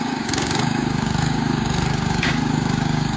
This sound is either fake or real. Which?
fake